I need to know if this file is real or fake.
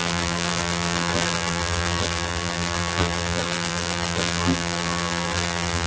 fake